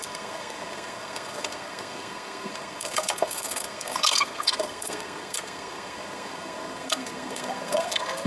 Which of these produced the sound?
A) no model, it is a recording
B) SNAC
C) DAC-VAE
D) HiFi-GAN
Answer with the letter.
B